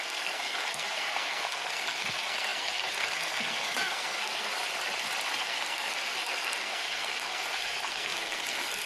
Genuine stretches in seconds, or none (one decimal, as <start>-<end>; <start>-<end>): 4.5-5.4